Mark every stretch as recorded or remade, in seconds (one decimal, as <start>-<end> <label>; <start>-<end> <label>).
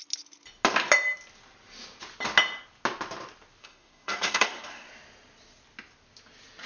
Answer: 0.0-3.6 recorded; 3.6-4.9 remade; 4.9-6.7 recorded